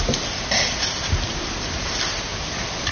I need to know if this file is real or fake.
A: real